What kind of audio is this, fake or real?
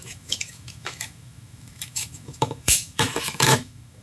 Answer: fake